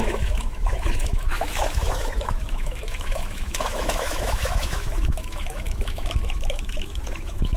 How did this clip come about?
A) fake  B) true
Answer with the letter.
A